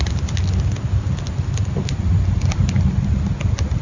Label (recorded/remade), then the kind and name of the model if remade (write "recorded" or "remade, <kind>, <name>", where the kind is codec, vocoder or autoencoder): recorded